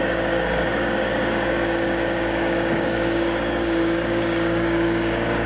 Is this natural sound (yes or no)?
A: no